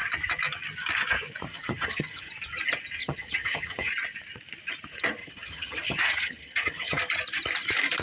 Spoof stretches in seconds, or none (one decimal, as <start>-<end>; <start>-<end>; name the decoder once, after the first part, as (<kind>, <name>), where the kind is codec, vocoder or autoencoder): 1.5-2.3 (vocoder, HiFi-GAN); 3.0-3.9; 5.2-7.0